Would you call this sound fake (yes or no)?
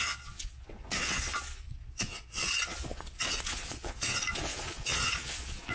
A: yes